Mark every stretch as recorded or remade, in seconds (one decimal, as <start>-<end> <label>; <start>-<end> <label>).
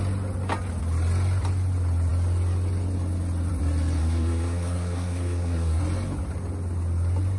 0.0-4.0 recorded; 4.0-5.8 remade; 5.8-7.4 recorded